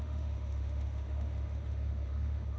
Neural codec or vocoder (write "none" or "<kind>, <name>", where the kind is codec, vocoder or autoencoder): autoencoder, DAC-VAE